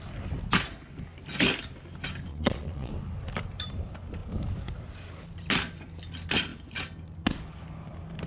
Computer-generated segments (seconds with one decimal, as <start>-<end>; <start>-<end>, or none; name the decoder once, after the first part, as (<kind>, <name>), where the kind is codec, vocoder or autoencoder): 2.3-2.9 (vocoder, Vocos)